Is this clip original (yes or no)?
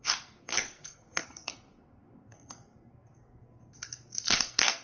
no